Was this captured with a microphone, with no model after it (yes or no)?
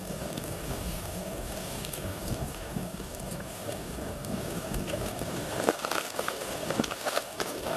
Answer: no